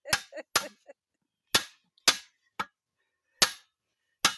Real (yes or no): yes